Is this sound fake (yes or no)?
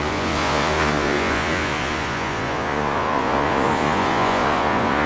yes